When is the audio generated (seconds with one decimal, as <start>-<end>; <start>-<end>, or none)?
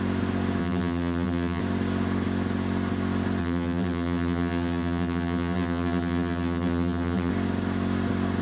0.6-1.6; 3.4-7.3